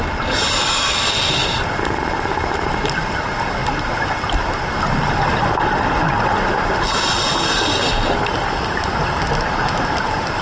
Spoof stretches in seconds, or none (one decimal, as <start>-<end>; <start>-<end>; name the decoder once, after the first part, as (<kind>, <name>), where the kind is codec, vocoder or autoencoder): none